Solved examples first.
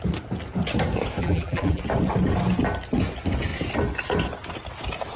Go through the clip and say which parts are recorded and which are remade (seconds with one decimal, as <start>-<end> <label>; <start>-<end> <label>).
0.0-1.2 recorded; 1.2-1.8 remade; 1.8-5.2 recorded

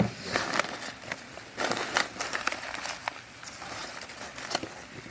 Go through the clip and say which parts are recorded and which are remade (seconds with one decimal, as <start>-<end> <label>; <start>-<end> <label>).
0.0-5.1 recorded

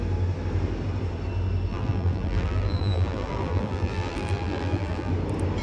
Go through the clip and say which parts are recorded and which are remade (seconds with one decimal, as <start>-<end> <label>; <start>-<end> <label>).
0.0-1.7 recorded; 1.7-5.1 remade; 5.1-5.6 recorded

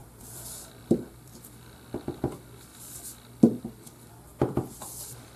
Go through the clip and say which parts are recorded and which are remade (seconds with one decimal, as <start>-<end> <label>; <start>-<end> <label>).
0.0-1.3 remade; 1.3-2.0 recorded; 2.0-2.7 remade; 2.7-3.6 recorded; 3.6-5.4 remade

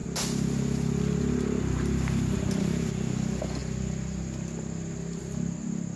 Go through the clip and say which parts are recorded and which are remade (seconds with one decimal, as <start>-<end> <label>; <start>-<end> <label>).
0.0-6.0 recorded